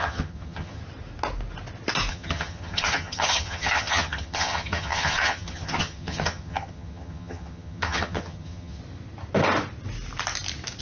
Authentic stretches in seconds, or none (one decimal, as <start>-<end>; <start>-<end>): 0.8-2.1; 8.8-10.8

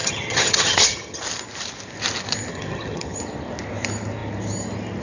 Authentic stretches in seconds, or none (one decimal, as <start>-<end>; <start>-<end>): 1.2-2.5; 3.2-5.0

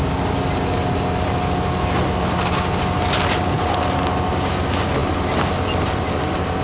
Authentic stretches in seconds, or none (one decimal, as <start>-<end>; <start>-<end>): 0.0-6.6

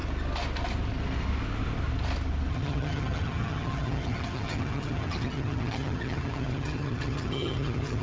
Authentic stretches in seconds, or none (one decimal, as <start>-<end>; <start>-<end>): 0.0-2.5

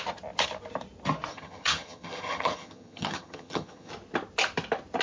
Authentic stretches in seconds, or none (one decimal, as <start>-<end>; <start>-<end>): 0.0-1.3; 3.9-5.0